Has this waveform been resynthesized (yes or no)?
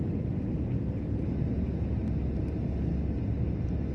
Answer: no